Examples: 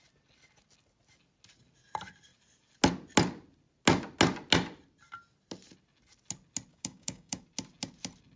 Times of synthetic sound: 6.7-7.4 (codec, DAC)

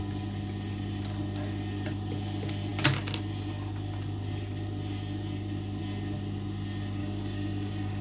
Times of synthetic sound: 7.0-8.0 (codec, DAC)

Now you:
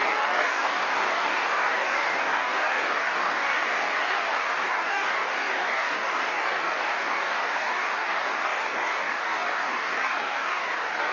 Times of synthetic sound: 0.0-11.1 (codec, DAC)

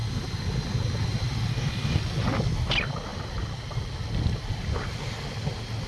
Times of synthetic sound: 1.5-2.0 (codec, DAC)